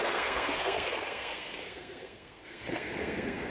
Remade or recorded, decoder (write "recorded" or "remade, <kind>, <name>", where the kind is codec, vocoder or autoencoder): remade, codec, SNAC